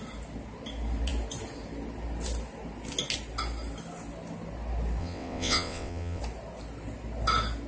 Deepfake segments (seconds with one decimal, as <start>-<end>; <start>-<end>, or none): 5.0-6.2